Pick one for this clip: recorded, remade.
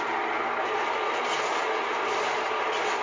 recorded